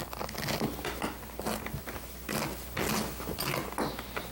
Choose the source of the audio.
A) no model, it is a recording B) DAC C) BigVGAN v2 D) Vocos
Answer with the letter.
A